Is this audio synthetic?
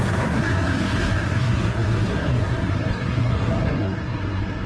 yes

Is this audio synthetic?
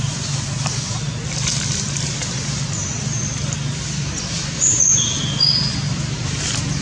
no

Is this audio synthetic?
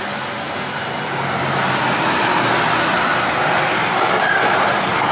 no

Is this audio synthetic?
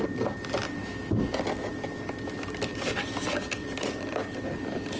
no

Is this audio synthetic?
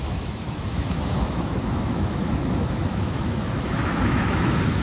yes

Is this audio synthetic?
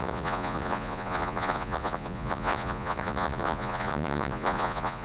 yes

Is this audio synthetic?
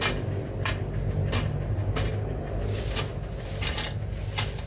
no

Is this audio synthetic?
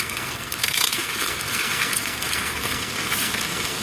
yes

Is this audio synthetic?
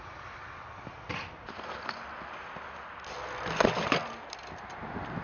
no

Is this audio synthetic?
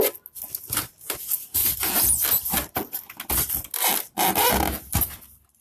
no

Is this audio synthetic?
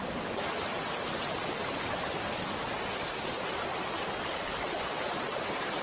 no